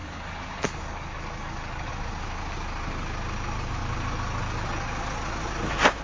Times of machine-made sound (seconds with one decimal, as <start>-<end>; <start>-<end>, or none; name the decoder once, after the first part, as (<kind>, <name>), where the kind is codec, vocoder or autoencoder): 0.0-1.9 (codec, DAC)